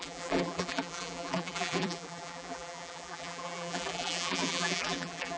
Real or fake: fake